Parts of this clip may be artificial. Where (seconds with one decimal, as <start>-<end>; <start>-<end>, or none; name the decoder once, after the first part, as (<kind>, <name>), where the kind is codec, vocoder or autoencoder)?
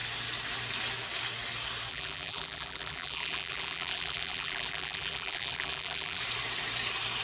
1.9-6.2 (vocoder, BigVGAN v2)